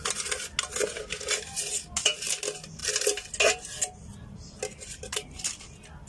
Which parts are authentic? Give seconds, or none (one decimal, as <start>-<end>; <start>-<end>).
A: 0.0-6.1